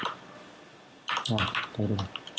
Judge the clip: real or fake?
real